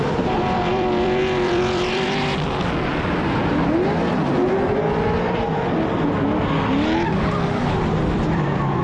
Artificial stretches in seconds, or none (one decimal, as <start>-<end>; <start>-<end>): 0.0-2.9; 7.2-8.8